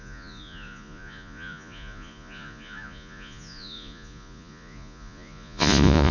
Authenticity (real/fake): fake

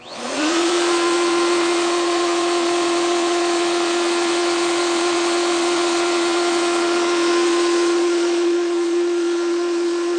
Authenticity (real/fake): fake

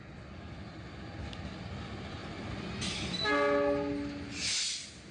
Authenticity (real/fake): real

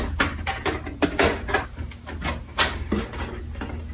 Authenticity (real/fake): real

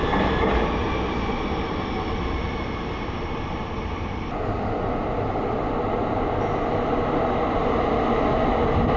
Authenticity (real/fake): real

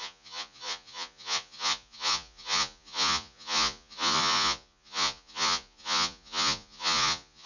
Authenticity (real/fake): fake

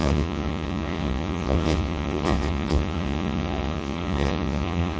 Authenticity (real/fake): fake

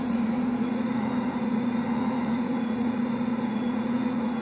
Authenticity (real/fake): fake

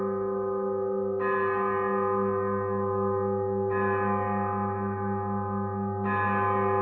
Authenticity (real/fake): real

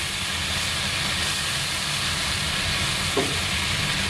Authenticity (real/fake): real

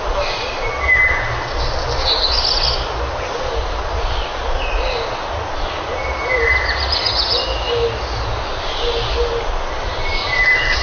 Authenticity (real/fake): real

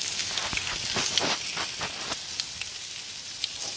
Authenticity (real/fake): real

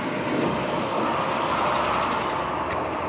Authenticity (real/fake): real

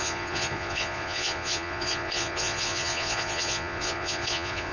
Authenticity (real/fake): fake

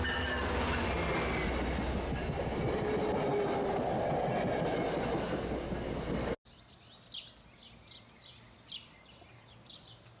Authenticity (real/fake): real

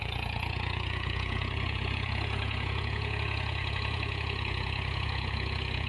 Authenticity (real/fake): fake